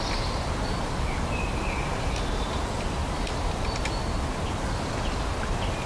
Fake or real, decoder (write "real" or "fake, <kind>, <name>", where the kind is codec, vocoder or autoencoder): real